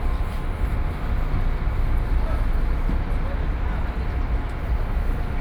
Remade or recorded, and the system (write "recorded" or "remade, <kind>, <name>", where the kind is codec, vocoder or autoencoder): recorded